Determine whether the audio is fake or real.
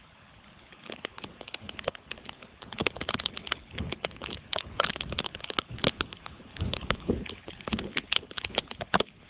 fake